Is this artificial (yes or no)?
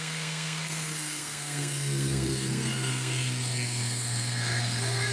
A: yes